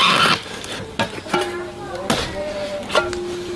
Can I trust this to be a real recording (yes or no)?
yes